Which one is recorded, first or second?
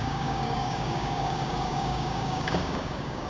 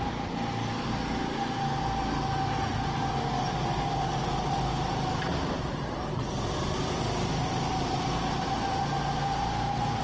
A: second